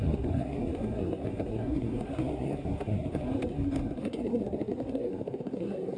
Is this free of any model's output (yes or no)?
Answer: no